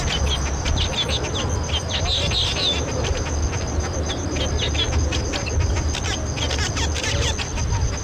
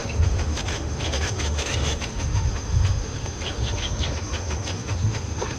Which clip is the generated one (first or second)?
second